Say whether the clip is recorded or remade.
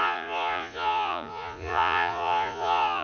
remade